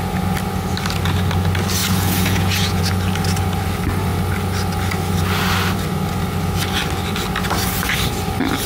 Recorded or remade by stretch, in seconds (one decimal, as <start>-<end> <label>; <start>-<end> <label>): 0.0-1.8 recorded; 1.8-2.8 remade; 2.8-8.7 recorded